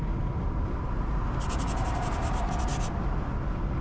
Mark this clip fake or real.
real